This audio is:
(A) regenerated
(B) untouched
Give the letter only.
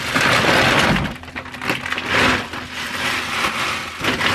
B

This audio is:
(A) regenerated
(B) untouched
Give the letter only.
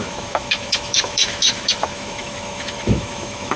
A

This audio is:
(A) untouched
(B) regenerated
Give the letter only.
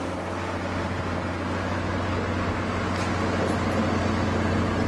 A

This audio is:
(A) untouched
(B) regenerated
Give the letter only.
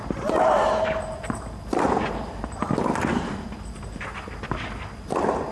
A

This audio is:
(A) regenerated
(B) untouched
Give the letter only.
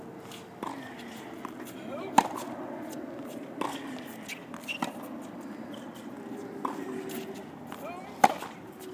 B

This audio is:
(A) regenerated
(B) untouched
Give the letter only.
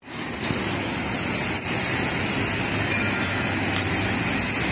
B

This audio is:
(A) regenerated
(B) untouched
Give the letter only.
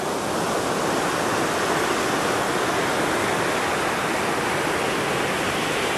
B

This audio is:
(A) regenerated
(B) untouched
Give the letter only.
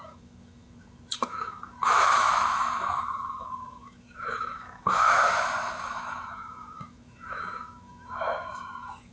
A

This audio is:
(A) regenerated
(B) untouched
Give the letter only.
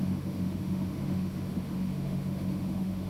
A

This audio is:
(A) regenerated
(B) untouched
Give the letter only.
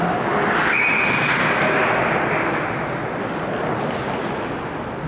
B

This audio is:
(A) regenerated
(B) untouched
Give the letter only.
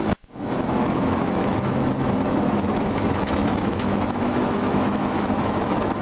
A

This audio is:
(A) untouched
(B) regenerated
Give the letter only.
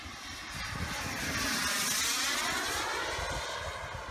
A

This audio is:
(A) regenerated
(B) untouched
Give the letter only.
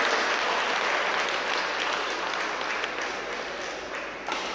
B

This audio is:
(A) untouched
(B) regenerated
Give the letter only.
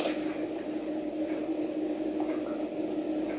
A